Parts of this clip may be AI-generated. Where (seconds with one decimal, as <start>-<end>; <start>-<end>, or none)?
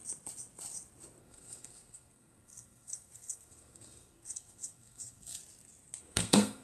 1.2-5.4; 6.0-6.6